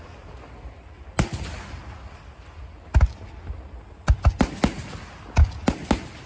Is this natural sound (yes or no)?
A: yes